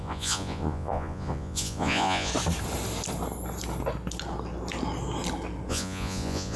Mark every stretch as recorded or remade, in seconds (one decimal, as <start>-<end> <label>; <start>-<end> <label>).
0.0-2.3 remade; 2.3-5.7 recorded; 5.7-6.6 remade